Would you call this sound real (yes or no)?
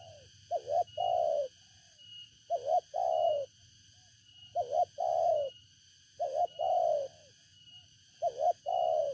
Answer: yes